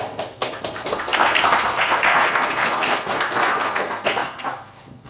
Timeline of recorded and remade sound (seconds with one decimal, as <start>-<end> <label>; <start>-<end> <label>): 0.0-5.1 remade